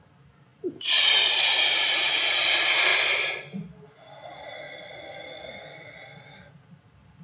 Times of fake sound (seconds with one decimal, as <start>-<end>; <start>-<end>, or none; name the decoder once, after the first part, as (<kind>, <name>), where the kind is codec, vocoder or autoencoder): 0.5-2.2 (vocoder, BigVGAN v2)